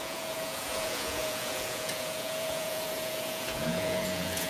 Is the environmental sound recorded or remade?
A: remade